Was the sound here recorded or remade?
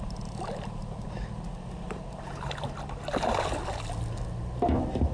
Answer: recorded